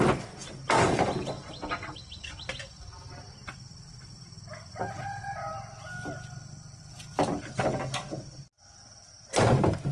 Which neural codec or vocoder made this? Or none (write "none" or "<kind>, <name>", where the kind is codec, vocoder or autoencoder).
none